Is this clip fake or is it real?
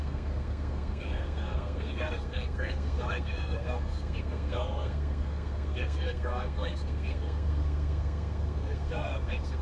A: fake